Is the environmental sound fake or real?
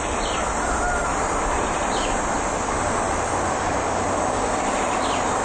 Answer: real